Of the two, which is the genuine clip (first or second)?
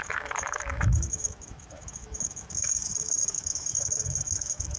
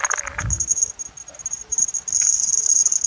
second